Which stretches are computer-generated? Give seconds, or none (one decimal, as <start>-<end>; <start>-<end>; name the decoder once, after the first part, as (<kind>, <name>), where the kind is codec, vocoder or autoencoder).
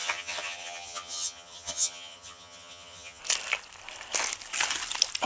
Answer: 0.0-3.2 (vocoder, HiFi-GAN)